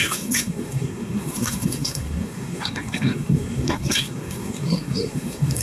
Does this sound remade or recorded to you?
remade